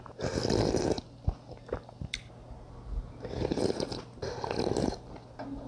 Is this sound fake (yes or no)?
no